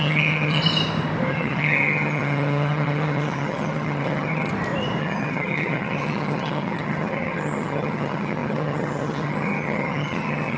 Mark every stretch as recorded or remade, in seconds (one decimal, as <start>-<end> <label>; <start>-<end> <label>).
0.0-0.6 remade; 0.6-1.3 recorded; 1.3-4.5 remade; 4.5-5.0 recorded; 5.0-10.6 remade